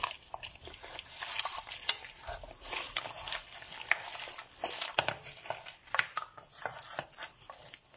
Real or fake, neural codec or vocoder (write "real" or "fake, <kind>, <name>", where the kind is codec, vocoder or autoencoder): real